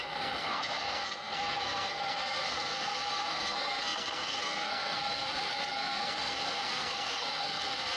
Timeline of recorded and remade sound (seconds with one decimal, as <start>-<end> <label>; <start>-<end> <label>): 0.0-8.0 remade